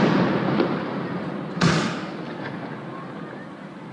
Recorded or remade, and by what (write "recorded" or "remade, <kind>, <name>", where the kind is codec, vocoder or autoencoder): recorded